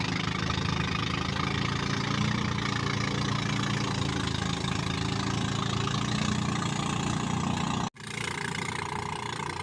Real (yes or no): yes